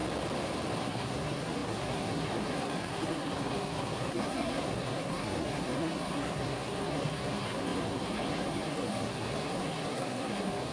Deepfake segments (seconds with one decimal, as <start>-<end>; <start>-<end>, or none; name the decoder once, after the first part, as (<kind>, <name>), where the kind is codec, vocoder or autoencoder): 0.8-10.7 (codec, SNAC)